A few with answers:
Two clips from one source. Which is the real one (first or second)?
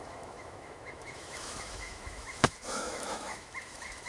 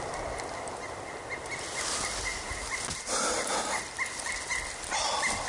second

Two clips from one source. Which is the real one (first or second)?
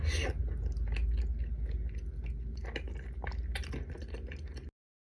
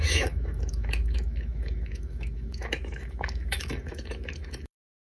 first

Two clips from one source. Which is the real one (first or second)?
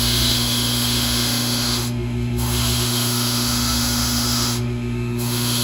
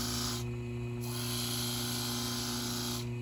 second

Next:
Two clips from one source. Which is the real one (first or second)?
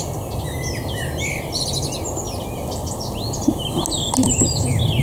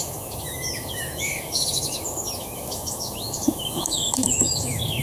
first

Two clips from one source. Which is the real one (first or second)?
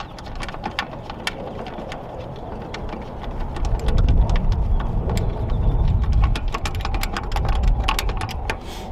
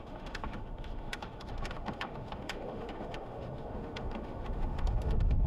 first